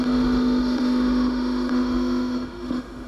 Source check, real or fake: fake